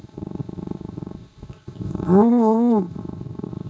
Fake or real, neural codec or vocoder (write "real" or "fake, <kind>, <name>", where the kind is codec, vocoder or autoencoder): fake, codec, ZipCodec